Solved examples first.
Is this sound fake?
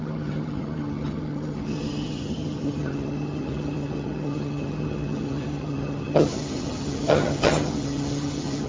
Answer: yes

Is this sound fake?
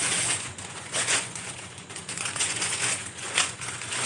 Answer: yes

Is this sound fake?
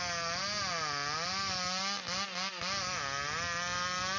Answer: no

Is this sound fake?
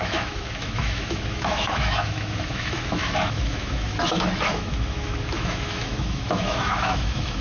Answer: yes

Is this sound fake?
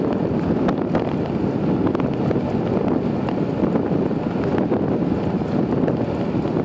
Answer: no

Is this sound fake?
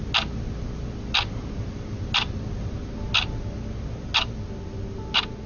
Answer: no